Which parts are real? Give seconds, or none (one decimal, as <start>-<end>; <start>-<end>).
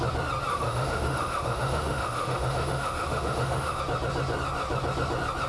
0.0-0.5; 3.8-5.5